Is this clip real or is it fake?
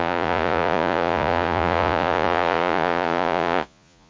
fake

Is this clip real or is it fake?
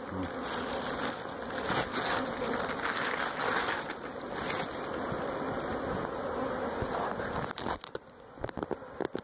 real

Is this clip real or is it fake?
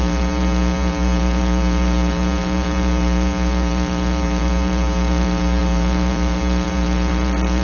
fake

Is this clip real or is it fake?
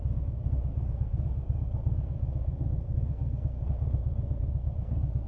fake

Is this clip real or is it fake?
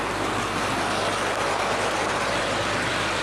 real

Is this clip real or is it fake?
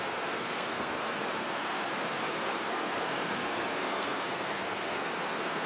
fake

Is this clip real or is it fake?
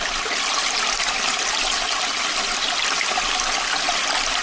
real